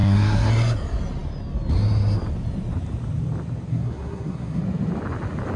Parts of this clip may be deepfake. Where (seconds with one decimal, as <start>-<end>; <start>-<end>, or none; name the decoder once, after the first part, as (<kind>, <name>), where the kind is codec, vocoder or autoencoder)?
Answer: 0.0-0.5 (codec, SNAC); 3.7-4.6